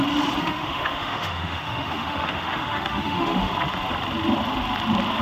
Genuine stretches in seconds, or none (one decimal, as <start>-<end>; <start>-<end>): 0.0-0.4; 3.5-5.2